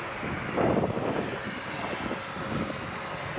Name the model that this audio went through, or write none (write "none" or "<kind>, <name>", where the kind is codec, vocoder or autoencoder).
none